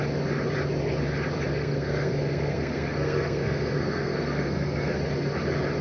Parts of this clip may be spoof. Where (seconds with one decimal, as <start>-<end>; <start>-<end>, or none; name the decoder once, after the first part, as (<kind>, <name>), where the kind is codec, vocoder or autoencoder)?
1.5-5.0 (codec, SNAC)